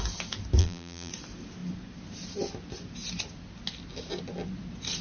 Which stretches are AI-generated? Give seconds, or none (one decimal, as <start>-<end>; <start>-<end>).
0.6-1.1